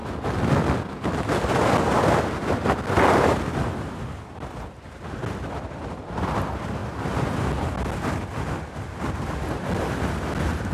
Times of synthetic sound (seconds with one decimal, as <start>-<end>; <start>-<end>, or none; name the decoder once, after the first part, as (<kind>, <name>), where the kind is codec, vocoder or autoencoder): none